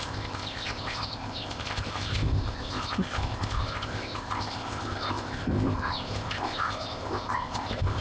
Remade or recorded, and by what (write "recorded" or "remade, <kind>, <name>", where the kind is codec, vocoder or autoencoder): remade, codec, ZipCodec